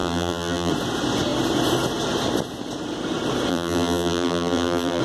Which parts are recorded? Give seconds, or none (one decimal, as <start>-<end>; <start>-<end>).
0.7-3.5